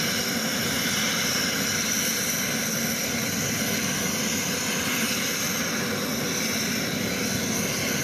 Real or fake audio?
real